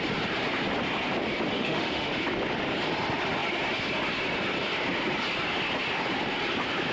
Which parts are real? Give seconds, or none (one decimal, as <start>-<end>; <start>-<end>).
0.0-1.5; 2.1-6.9